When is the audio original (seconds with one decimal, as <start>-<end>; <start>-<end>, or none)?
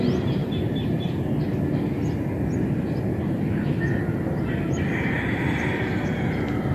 0.0-6.7